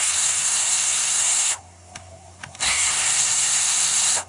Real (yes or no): no